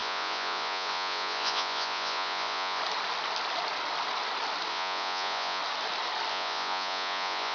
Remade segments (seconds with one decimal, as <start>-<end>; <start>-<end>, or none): 0.0-2.8; 4.7-5.6; 6.3-7.5